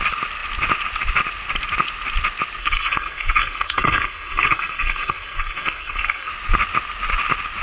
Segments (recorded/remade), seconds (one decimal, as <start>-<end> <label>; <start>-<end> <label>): 0.0-2.6 recorded; 2.6-6.3 remade; 6.3-7.6 recorded